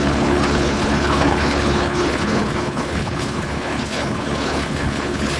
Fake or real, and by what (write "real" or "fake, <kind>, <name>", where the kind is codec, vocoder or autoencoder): fake, codec, HILCodec